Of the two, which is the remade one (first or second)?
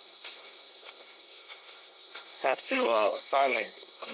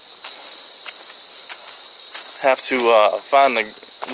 first